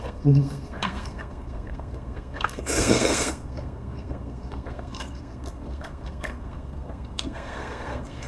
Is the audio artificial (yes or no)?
yes